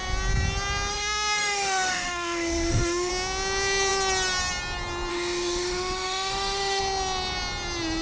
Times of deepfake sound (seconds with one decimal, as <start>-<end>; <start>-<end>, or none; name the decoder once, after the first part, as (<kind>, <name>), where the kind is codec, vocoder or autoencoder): 0.9-3.1 (autoencoder, DAC-VAE); 5.1-6.8